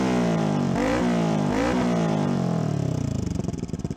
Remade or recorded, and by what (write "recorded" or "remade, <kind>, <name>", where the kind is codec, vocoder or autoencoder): recorded